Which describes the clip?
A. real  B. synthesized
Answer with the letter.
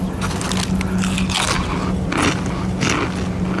A